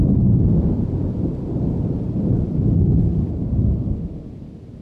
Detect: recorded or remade recorded